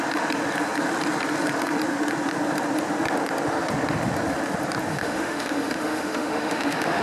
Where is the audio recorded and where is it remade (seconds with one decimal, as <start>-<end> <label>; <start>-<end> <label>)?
0.0-4.9 recorded; 4.9-7.0 remade